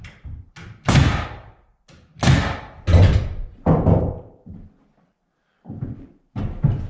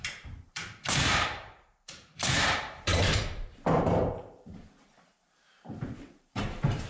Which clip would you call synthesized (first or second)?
second